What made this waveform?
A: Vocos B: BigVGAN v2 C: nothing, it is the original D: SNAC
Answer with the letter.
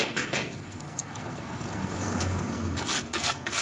D